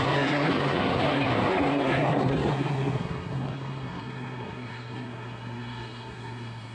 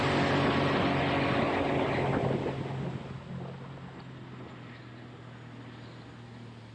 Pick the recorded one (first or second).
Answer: second